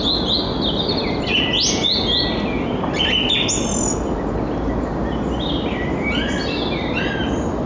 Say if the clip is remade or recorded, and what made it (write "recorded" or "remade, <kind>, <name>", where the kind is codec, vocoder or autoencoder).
recorded